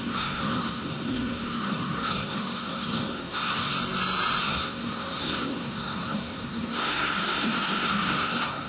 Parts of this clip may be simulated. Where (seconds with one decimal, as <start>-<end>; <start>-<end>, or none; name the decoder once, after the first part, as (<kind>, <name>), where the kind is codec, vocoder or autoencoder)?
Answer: 0.0-3.7 (codec, SNAC); 4.4-8.7